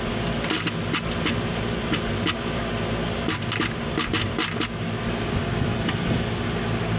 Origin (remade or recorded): recorded